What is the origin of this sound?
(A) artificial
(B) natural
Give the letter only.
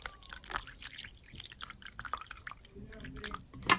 B